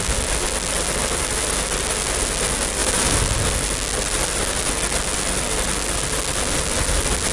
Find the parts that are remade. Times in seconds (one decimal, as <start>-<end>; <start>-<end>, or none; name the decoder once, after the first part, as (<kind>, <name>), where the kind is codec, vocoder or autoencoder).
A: 2.8-3.3 (vocoder, BigVGAN v2)